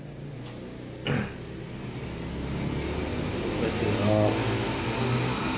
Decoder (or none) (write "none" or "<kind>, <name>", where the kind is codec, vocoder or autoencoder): none